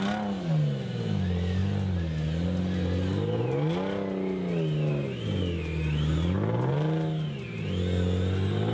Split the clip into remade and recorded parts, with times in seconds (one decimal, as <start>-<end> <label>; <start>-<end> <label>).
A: 0.0-8.7 recorded